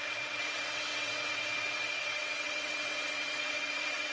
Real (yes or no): no